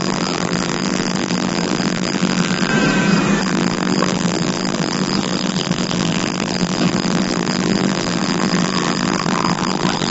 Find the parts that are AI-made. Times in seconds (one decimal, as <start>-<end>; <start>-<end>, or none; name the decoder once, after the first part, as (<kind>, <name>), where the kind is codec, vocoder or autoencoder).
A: 0.0-2.7 (vocoder, BigVGAN v2); 3.4-10.1